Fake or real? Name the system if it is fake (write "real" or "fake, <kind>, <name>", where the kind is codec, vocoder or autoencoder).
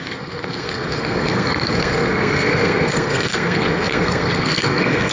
fake, codec, SNAC